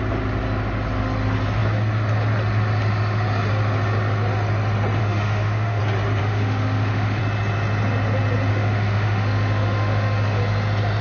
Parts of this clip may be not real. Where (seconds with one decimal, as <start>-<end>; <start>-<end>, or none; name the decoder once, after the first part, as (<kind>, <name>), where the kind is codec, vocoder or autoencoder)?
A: 5.0-5.8 (autoencoder, DAC-VAE); 6.2-7.2; 8.5-10.4

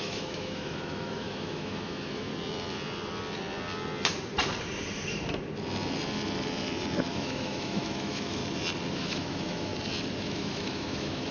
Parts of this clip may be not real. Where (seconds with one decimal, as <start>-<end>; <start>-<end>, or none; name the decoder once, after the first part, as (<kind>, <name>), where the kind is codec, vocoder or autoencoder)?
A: 0.0-2.3 (autoencoder, DAC-VAE); 7.1-8.4; 8.9-9.7; 10.2-11.3

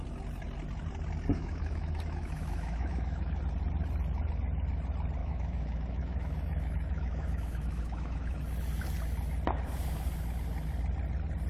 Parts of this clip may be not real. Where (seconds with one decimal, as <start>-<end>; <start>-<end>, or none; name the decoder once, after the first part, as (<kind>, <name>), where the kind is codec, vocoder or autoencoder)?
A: 1.3-3.4 (autoencoder, DAC-VAE); 5.2-8.4

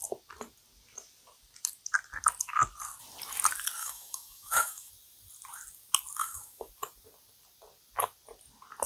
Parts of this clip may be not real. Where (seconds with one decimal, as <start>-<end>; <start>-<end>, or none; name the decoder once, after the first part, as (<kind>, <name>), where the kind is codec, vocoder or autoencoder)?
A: 3.8-4.9 (autoencoder, DAC-VAE); 6.2-6.7

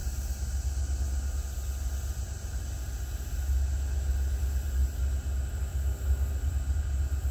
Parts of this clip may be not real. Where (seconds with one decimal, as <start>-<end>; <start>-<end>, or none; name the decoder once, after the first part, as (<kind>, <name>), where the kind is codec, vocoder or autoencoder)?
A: none